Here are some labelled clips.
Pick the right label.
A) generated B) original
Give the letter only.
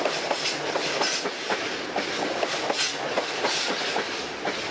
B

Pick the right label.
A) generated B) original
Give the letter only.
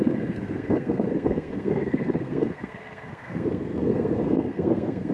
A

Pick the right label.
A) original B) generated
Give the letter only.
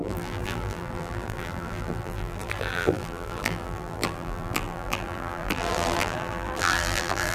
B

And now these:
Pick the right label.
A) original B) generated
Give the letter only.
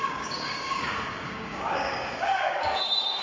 B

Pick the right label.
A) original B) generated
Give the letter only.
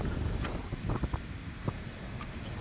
A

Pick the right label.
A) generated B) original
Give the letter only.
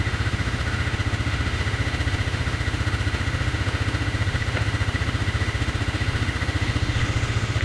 A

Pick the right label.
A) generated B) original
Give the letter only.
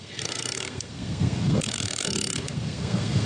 A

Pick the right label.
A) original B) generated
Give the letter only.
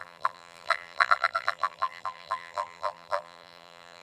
B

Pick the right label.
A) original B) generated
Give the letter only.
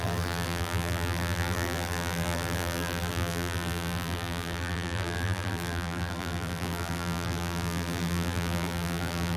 B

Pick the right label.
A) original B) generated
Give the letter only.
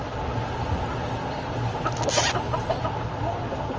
A